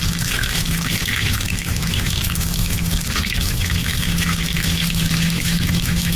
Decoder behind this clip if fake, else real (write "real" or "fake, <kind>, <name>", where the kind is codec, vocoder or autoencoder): fake, autoencoder, DAC-VAE